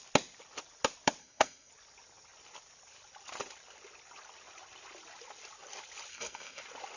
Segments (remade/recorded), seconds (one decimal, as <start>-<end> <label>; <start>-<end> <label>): 0.0-1.2 recorded; 1.2-1.7 remade; 1.7-6.1 recorded; 6.1-6.6 remade; 6.6-7.0 recorded